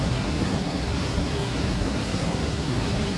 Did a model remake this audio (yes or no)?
yes